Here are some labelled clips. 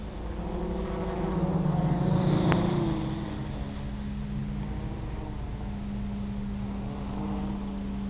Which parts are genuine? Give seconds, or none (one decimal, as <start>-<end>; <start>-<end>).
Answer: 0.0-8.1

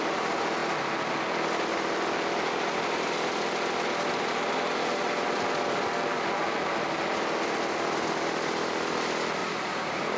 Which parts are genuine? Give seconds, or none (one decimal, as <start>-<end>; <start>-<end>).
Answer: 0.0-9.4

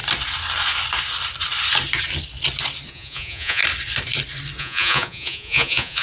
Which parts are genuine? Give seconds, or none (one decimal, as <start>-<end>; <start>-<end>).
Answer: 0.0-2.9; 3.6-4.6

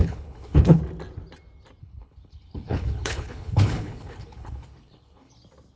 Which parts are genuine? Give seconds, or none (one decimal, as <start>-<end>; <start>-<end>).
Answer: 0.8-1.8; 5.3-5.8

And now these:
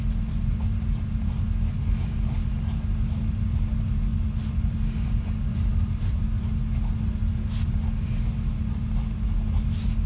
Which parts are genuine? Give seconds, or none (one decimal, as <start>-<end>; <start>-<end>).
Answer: 0.0-10.1

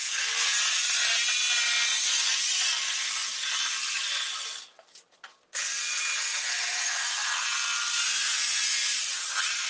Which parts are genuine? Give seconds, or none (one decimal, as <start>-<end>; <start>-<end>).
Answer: 0.0-6.3; 6.9-9.7